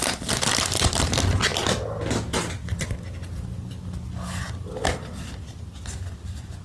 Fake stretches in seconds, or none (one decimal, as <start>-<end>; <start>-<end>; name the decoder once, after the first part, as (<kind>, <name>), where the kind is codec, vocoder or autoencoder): none